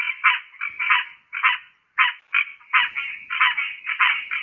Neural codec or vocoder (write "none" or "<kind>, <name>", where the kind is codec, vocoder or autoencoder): vocoder, BigVGAN v2